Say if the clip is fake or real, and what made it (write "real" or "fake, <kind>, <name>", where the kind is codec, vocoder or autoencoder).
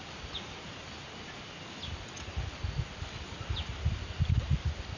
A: real